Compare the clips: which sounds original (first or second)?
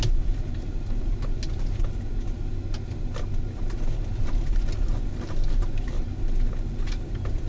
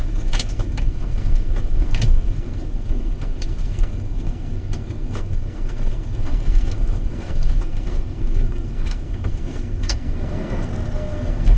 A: first